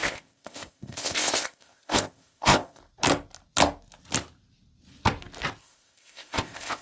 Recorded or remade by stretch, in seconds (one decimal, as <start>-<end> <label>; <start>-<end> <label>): 0.0-2.8 remade; 2.8-5.6 recorded; 5.6-6.8 remade